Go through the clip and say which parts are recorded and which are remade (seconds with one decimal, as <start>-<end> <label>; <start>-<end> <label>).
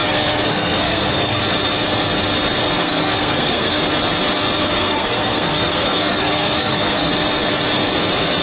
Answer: 0.0-1.4 remade; 1.4-2.8 recorded; 2.8-3.8 remade; 3.8-4.6 recorded; 4.6-7.1 remade; 7.1-8.4 recorded